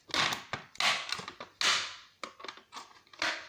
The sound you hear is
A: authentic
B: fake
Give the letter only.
A